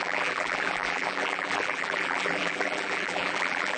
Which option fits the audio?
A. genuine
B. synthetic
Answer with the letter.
B